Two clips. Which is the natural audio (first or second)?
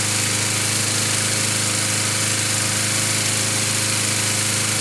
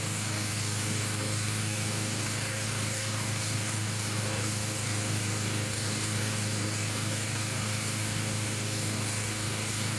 first